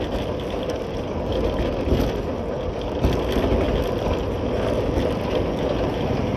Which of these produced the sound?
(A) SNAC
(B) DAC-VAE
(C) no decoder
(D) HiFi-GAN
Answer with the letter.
C